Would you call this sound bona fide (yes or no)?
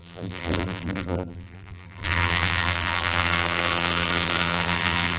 no